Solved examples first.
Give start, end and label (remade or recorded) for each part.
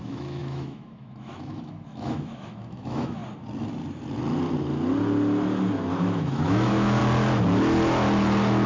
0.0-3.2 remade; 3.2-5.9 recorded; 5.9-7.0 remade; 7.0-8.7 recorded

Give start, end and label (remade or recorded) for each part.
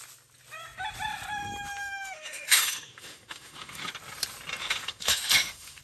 0.0-1.8 recorded; 1.8-3.9 remade; 3.9-4.6 recorded; 4.6-5.8 remade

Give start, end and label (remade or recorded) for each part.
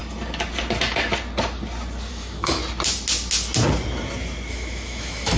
0.0-2.1 recorded; 2.1-2.6 remade; 2.6-4.5 recorded; 4.5-5.4 remade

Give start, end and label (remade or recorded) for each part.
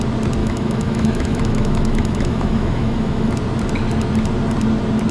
0.0-0.4 recorded; 0.4-3.3 remade; 3.3-5.1 recorded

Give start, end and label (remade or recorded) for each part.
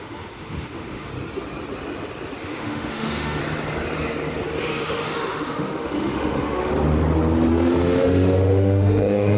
0.0-1.1 remade; 1.1-2.4 recorded; 2.4-3.4 remade; 3.4-4.6 recorded; 4.6-6.7 remade; 6.7-7.5 recorded; 7.5-9.4 remade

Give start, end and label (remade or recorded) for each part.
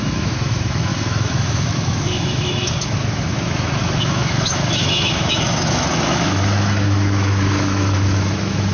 0.0-8.7 remade